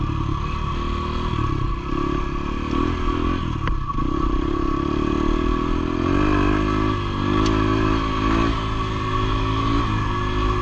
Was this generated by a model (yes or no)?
no